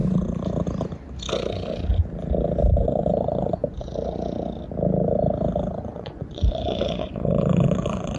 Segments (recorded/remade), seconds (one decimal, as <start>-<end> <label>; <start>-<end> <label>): 0.0-2.8 recorded; 2.8-3.9 remade; 3.9-5.8 recorded; 5.8-8.2 remade